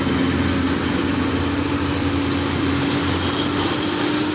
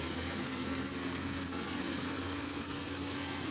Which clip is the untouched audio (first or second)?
first